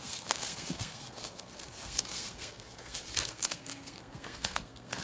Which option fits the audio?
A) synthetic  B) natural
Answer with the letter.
A